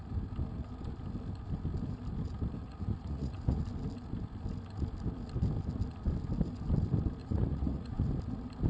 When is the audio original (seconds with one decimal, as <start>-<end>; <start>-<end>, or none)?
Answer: 0.0-2.6; 3.6-7.2; 8.1-8.7